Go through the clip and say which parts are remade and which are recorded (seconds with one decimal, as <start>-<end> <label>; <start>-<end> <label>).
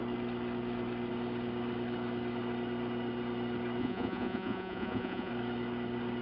0.0-3.8 recorded; 3.8-5.3 remade; 5.3-6.2 recorded